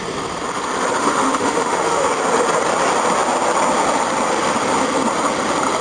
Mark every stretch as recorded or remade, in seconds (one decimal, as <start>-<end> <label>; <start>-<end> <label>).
0.0-1.0 recorded; 1.0-2.1 remade; 2.1-5.8 recorded